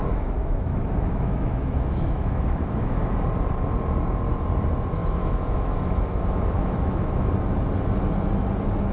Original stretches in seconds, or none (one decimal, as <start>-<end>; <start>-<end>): 3.1-5.0; 7.3-8.9